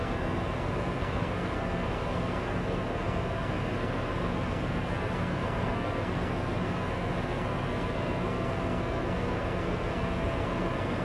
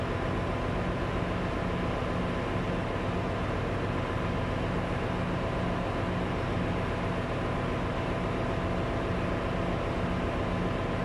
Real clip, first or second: second